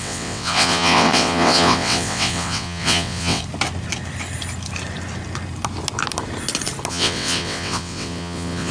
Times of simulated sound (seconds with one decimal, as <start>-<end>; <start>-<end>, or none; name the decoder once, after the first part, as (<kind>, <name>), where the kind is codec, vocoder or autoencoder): 0.0-3.4 (vocoder, WaveNeXt); 6.9-8.7

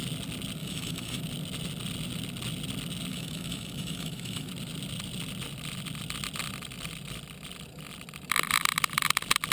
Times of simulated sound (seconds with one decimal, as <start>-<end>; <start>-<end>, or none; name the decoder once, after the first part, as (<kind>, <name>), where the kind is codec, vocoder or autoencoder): 0.6-1.2 (autoencoder, DAC-VAE); 3.1-4.5